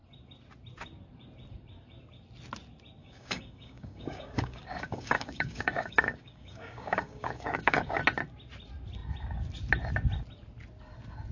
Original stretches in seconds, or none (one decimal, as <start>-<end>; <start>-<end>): 0.0-3.0; 8.0-11.3